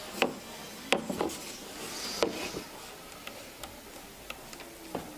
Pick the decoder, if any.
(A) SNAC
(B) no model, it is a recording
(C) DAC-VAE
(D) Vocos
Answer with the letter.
B